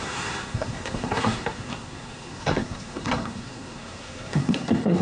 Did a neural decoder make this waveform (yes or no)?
yes